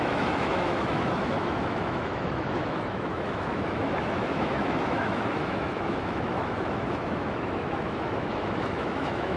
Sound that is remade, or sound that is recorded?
remade